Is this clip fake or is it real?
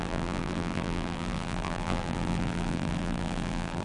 fake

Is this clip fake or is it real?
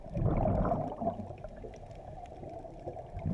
fake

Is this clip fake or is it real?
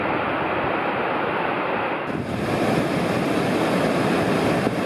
real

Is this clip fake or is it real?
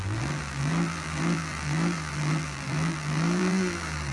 fake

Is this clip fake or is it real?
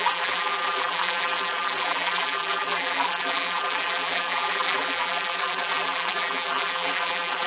fake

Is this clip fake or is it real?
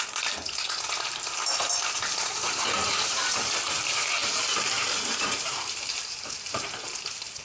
fake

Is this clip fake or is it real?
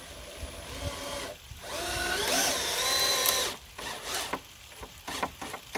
real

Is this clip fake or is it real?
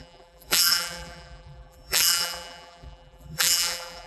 fake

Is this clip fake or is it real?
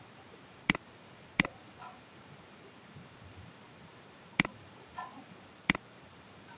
fake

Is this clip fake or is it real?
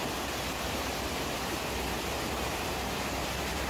fake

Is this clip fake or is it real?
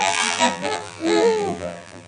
fake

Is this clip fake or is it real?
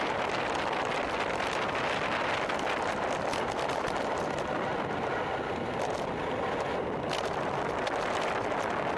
real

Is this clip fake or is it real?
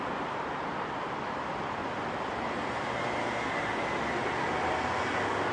fake